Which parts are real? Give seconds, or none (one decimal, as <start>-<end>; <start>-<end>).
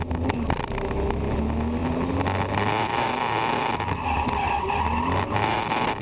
0.0-6.0